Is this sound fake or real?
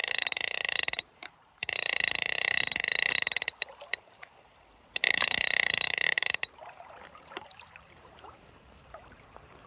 fake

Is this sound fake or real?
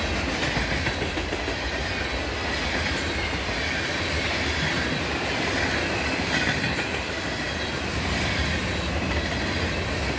real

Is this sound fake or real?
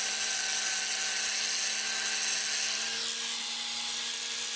real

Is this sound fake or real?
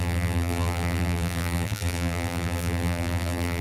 fake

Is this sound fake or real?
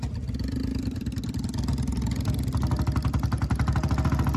real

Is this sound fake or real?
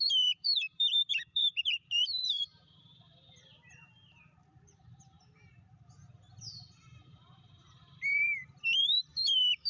fake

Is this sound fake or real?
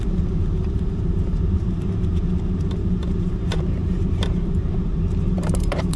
fake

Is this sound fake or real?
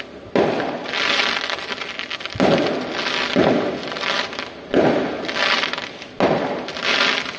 real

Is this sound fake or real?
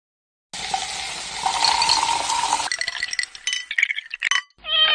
real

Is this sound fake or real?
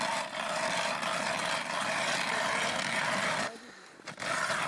real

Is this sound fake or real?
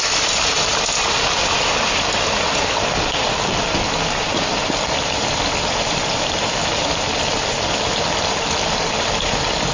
fake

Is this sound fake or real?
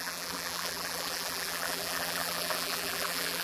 fake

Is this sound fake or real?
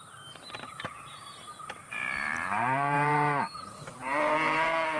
fake